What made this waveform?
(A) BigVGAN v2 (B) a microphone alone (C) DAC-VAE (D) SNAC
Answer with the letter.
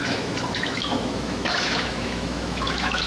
C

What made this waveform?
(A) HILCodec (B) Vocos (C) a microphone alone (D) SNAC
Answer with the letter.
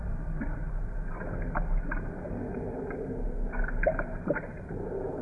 C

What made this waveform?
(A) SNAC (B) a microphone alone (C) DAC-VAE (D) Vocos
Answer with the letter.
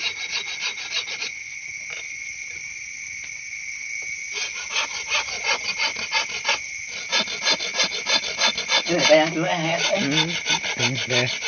B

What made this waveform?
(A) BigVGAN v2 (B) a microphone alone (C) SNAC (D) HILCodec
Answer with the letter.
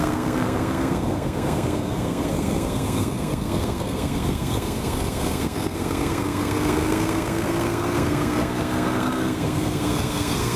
C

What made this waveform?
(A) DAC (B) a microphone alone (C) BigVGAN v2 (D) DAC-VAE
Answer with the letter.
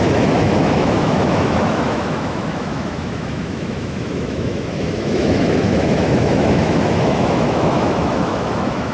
D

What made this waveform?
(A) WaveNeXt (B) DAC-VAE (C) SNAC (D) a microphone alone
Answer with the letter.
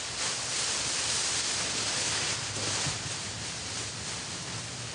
D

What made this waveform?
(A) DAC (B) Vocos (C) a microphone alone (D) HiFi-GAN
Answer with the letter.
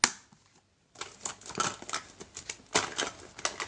C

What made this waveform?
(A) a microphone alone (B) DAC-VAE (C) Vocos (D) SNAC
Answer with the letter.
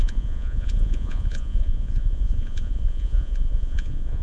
C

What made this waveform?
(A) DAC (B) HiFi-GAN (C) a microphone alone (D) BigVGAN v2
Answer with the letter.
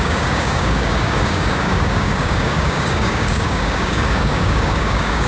A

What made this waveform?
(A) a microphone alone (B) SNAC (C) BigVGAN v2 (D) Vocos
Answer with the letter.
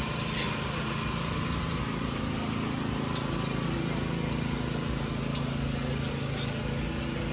A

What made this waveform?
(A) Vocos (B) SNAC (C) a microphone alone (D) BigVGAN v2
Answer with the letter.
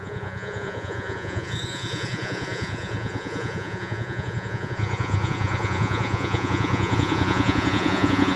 A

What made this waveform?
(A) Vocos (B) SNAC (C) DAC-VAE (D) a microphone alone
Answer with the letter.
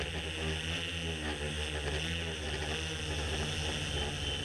D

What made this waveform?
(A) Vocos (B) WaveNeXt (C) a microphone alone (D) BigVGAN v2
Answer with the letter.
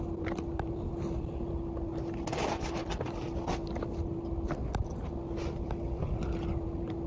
C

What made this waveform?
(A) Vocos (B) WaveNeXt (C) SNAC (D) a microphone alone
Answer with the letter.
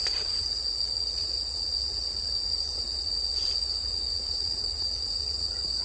A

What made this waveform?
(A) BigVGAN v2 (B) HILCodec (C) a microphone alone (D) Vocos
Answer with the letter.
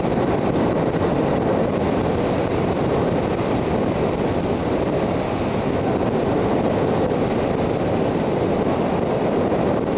A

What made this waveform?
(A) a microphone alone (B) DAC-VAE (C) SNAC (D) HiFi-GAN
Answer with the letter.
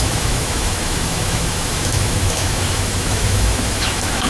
B